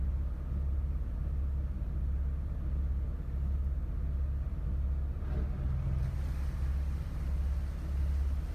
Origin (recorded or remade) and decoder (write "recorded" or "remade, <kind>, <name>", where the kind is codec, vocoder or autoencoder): recorded